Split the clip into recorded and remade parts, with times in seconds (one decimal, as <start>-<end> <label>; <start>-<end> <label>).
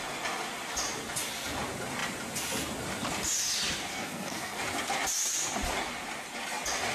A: 0.0-3.9 recorded; 3.9-4.6 remade; 4.6-6.9 recorded